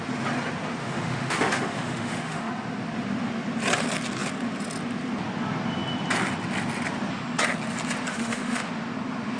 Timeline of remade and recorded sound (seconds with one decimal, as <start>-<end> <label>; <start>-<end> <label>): 0.0-0.8 recorded; 0.8-2.5 remade; 2.5-8.1 recorded; 8.1-8.7 remade; 8.7-9.4 recorded